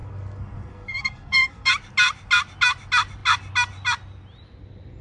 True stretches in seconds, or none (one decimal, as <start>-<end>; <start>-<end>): 1.7-5.0